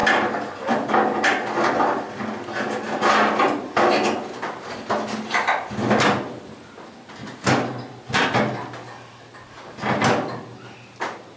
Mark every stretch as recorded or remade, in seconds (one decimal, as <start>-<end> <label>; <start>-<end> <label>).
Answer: 0.0-11.4 recorded